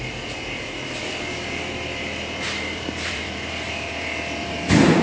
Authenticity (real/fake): fake